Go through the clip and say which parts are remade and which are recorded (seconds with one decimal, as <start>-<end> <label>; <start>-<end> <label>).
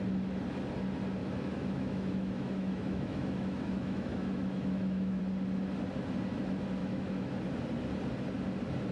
0.0-1.2 recorded; 1.2-5.2 remade; 5.2-6.8 recorded; 6.8-7.3 remade; 7.3-8.9 recorded